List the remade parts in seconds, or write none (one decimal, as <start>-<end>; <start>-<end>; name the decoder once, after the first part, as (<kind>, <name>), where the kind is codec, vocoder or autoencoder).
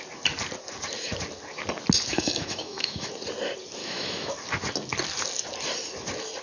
2.1-3.1 (autoencoder, DAC-VAE); 3.8-4.3